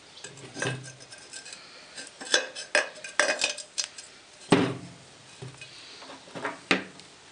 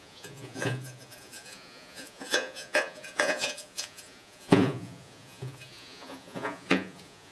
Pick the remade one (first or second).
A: second